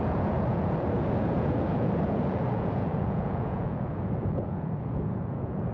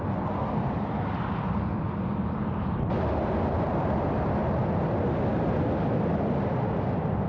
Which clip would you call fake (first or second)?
first